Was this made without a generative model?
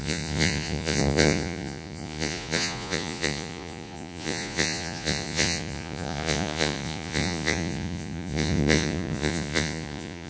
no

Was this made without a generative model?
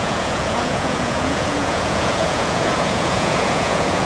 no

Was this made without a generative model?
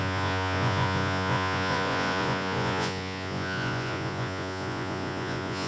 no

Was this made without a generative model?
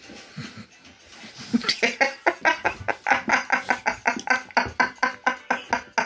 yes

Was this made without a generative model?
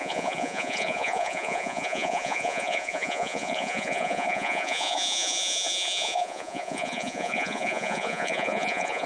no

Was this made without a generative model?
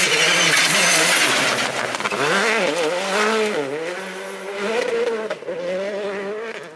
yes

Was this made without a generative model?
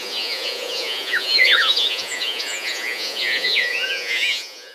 no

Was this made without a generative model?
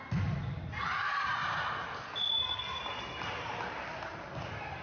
yes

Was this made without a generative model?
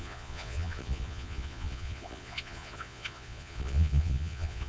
no